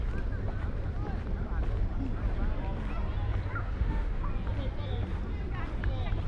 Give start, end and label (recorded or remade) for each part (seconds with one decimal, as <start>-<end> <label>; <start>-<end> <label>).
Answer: 0.0-3.6 recorded; 3.6-4.2 remade; 4.2-6.3 recorded